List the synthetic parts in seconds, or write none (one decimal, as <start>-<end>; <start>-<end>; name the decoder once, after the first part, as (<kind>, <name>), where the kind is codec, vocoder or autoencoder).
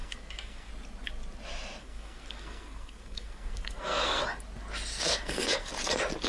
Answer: 0.0-0.7 (codec, SNAC); 1.8-4.2; 4.9-5.7